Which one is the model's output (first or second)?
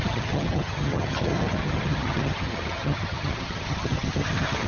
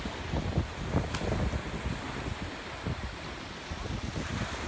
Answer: first